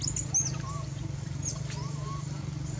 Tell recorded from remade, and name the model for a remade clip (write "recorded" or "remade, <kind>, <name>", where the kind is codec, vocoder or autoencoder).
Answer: recorded